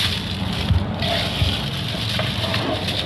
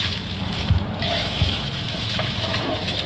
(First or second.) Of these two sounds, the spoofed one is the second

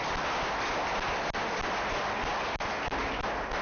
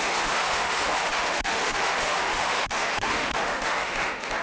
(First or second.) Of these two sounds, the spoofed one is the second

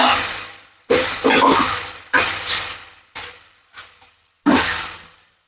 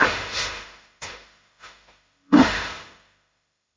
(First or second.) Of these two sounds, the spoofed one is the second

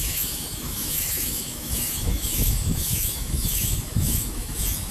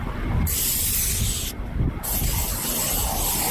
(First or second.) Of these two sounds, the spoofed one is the first